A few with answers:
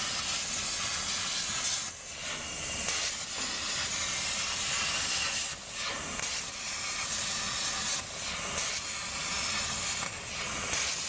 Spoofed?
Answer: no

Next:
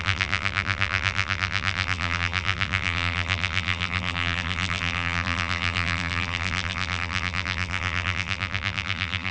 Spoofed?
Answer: yes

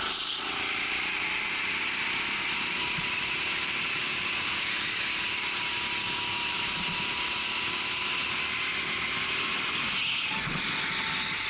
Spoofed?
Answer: no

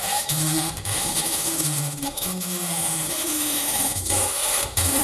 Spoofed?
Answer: yes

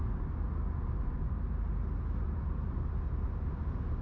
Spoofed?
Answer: no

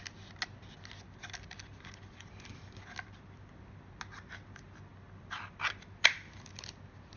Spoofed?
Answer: no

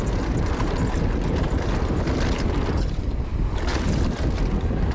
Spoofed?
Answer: no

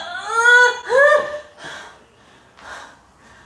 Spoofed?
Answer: no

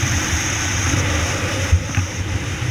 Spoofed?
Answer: yes